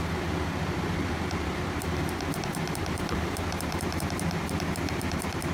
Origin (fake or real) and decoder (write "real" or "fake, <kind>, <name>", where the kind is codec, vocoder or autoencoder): fake, vocoder, BigVGAN v2